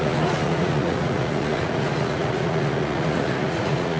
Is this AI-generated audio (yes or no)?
yes